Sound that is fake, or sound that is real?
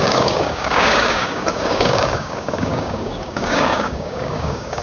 fake